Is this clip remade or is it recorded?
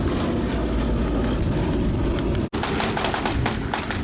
recorded